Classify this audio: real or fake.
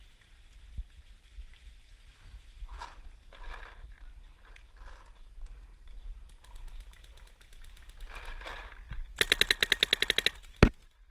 real